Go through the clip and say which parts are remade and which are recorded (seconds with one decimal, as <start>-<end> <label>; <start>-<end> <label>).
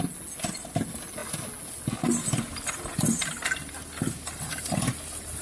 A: 0.0-5.4 recorded